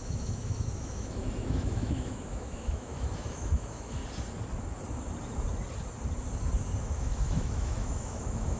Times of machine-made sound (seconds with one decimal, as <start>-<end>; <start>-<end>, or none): 0.0-4.0; 6.8-8.6